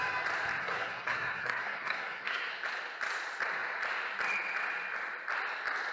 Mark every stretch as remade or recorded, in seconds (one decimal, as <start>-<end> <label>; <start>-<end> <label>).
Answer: 0.0-0.6 recorded; 0.6-2.5 remade; 2.5-5.9 recorded